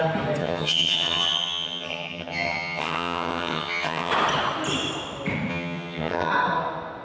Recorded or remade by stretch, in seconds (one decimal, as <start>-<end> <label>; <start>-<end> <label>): 0.0-0.4 recorded; 0.4-4.1 remade; 4.1-5.5 recorded; 5.5-6.3 remade; 6.3-7.0 recorded